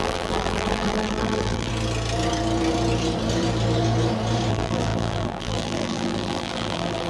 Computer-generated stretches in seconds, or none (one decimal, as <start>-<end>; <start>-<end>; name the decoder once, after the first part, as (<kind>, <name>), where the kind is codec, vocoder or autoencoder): 0.0-1.7 (vocoder, BigVGAN v2); 4.5-7.1